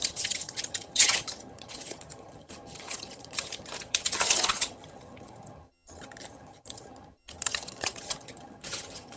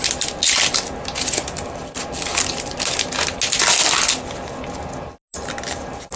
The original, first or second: second